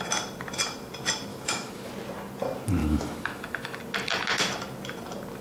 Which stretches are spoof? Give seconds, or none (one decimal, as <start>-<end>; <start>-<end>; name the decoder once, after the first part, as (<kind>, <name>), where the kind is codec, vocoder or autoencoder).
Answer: 1.3-1.9 (autoencoder, DAC-VAE); 2.8-3.8